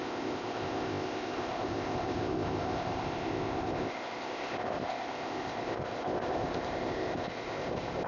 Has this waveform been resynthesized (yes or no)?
yes